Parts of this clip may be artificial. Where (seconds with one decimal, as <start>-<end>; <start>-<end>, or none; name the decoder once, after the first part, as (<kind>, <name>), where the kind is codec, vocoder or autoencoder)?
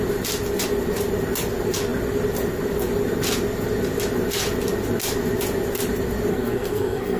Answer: 6.3-7.2 (codec, SNAC)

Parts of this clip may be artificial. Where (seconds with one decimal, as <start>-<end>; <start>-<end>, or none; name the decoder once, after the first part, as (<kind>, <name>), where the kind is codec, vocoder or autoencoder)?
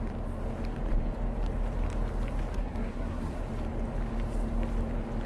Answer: 2.5-3.4 (codec, SNAC)